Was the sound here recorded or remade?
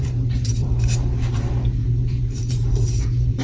remade